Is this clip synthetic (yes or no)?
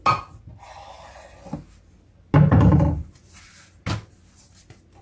no